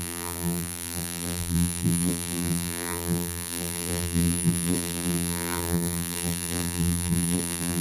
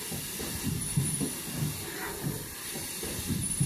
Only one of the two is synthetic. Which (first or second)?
first